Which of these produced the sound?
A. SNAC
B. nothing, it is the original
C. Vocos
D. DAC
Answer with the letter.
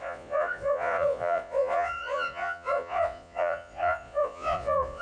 C